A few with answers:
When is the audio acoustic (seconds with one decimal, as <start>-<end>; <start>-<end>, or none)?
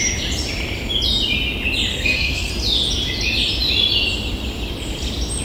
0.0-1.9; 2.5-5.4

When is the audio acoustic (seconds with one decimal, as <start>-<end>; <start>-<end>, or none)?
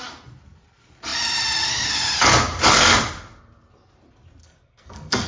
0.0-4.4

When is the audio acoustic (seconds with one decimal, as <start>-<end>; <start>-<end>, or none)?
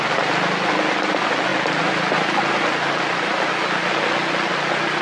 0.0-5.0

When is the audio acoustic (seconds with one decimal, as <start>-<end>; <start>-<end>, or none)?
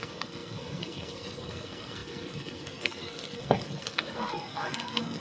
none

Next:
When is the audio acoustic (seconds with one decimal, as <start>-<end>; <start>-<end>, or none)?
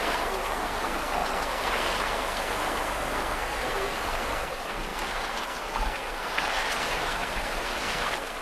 none